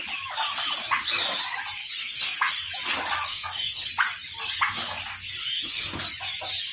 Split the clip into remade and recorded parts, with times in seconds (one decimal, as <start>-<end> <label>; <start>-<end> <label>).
0.0-1.8 recorded; 1.8-2.5 remade; 2.5-3.3 recorded; 3.3-3.9 remade; 3.9-5.4 recorded; 5.4-6.0 remade; 6.0-6.7 recorded